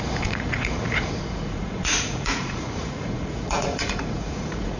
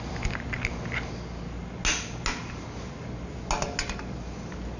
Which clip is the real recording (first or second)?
second